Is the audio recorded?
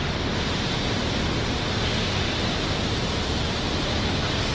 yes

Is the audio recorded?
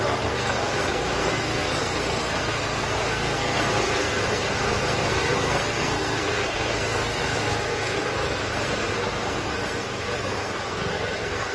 no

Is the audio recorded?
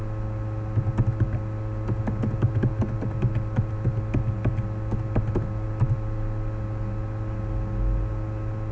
yes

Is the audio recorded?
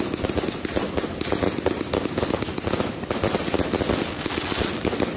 yes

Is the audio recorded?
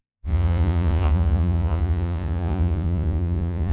no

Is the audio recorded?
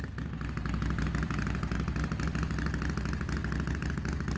yes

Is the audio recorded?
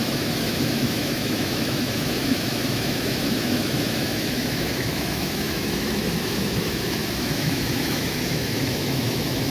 no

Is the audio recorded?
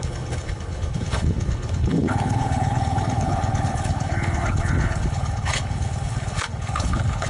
no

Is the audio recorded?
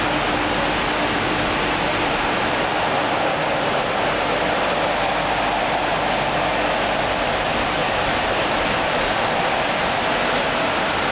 yes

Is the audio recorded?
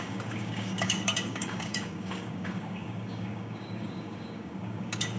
no